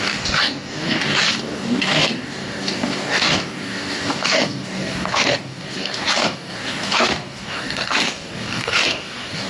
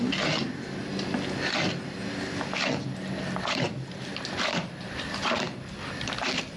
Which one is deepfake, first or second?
first